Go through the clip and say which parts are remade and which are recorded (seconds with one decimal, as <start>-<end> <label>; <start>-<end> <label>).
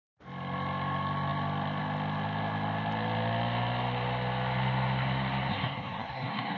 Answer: 0.0-5.5 recorded; 5.5-6.6 remade